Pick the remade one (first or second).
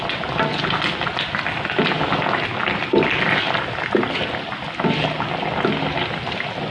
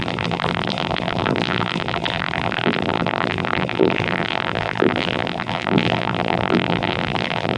second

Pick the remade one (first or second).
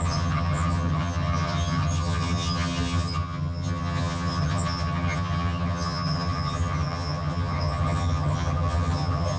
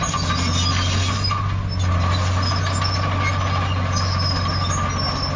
first